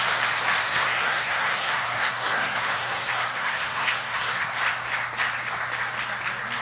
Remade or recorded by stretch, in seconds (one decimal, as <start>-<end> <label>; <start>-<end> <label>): 0.0-0.6 recorded; 0.6-4.6 remade; 4.6-6.6 recorded